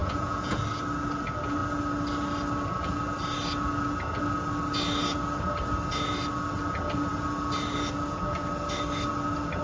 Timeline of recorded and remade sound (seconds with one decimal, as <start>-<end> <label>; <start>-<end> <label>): 0.0-0.6 remade; 0.6-9.6 recorded